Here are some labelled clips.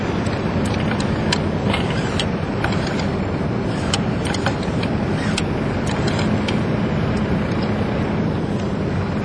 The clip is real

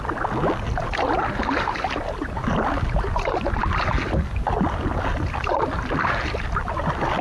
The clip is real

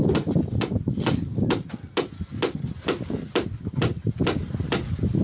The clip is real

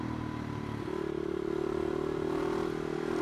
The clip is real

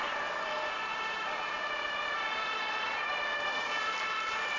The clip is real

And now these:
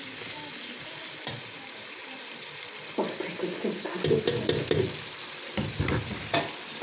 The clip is fake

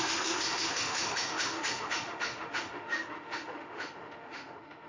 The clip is fake